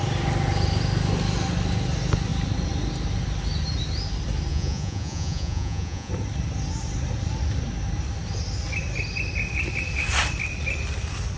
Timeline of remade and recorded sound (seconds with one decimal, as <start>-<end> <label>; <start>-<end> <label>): 0.0-4.5 recorded; 4.5-6.1 remade; 6.1-11.4 recorded